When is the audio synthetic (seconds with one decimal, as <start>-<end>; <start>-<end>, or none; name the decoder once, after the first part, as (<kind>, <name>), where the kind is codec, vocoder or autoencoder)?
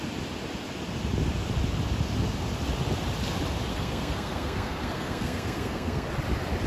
3.7-6.1 (codec, SNAC)